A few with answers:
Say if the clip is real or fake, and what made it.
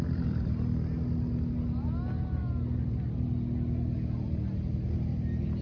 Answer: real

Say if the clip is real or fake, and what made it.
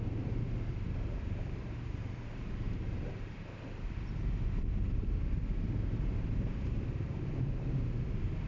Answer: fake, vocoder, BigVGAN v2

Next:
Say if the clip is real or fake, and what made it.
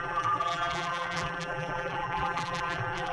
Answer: fake, vocoder, BigVGAN v2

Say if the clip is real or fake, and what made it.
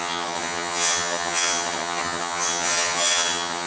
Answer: fake, vocoder, HiFi-GAN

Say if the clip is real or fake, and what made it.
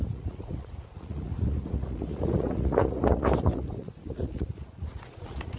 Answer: fake, vocoder, Vocos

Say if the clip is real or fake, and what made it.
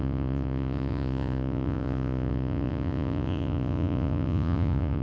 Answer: fake, vocoder, Vocos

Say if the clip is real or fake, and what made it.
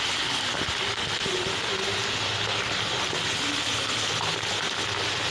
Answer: real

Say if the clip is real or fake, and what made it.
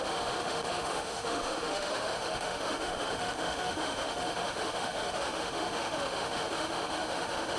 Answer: fake, autoencoder, DAC-VAE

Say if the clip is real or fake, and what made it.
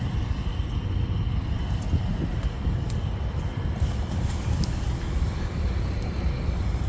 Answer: real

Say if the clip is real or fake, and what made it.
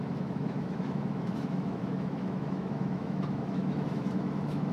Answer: fake, autoencoder, DAC-VAE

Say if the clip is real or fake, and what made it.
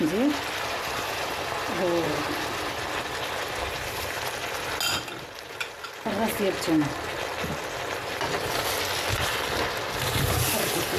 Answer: real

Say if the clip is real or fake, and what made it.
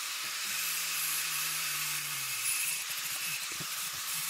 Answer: fake, vocoder, BigVGAN v2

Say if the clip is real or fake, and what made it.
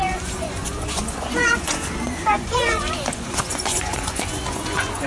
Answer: fake, vocoder, Vocos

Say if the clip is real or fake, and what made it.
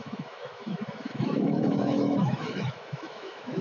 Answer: fake, autoencoder, DAC-VAE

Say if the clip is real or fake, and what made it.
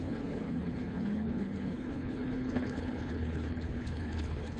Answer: fake, codec, HILCodec